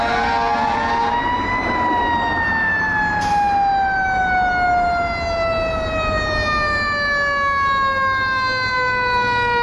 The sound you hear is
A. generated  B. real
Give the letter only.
B